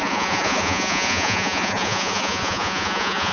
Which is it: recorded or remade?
remade